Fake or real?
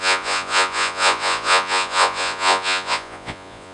fake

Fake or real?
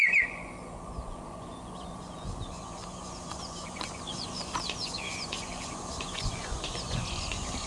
fake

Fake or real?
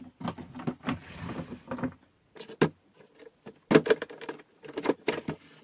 real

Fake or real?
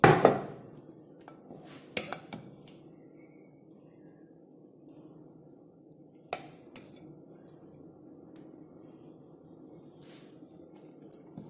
real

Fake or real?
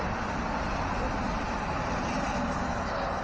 real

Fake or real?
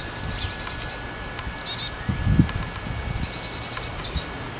real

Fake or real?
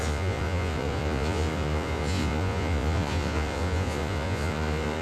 fake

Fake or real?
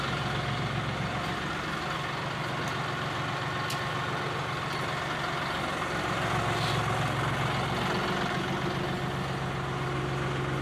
real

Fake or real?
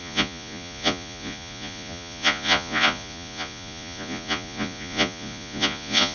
fake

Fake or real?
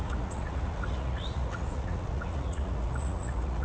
fake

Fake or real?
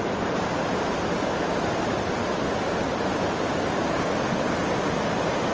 real